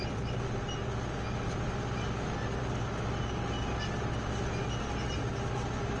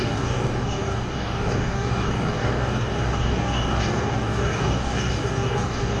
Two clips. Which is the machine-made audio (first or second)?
second